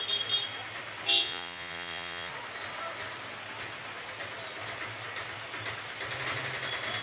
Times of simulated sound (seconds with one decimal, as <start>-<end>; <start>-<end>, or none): 1.2-2.3